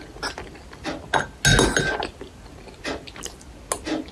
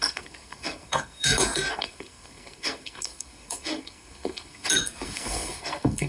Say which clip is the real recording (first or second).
first